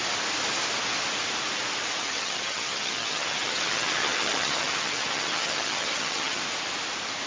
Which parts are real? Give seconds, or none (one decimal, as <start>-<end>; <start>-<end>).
0.0-2.0; 6.4-7.3

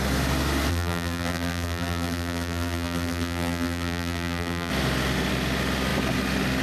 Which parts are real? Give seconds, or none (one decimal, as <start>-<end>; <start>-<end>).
0.0-0.7; 4.7-6.6